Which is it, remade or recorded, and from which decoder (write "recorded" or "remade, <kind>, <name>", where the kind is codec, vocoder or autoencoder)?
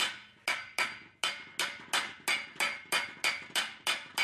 recorded